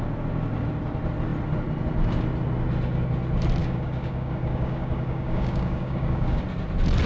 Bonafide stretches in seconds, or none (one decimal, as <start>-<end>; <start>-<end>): 0.0-3.6; 6.4-7.1